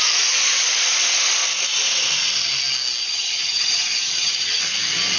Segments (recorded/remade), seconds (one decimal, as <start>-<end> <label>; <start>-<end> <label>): 0.0-3.0 recorded; 3.0-4.6 remade; 4.6-5.2 recorded